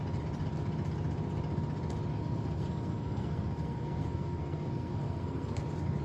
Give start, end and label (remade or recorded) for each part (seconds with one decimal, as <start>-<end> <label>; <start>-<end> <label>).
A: 0.0-2.2 recorded; 2.2-5.6 remade; 5.6-6.0 recorded